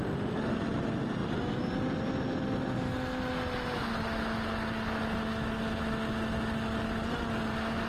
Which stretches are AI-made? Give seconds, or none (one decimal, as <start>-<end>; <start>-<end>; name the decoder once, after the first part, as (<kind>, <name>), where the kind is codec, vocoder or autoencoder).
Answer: none